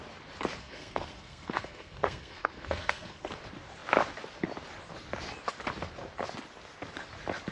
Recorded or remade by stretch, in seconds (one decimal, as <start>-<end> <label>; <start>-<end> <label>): 0.0-0.6 recorded; 0.6-3.4 remade; 3.4-7.5 recorded